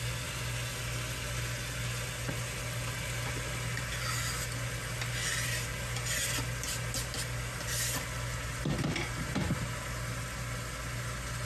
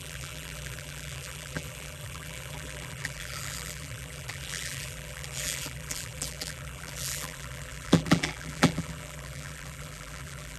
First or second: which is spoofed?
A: second